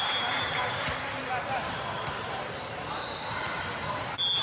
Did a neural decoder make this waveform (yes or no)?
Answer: no